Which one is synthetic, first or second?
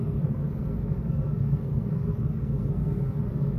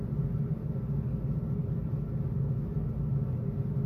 first